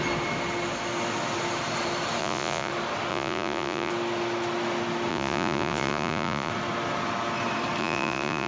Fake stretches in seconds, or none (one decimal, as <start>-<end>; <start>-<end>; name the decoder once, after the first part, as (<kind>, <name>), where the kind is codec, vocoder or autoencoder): 2.2-2.7 (vocoder, Vocos); 3.1-3.9; 5.1-6.5; 7.8-8.5